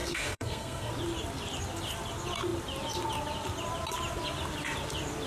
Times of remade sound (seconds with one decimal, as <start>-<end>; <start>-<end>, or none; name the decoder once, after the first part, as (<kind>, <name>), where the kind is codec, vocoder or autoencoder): 0.0-0.9 (codec, SNAC)